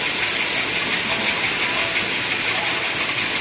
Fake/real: real